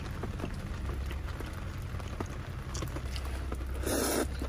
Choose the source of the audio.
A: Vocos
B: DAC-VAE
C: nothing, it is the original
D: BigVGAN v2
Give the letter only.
C